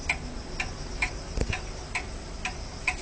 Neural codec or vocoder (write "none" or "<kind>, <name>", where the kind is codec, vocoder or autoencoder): none